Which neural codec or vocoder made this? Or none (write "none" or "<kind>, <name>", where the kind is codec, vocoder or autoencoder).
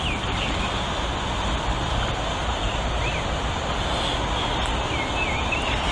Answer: none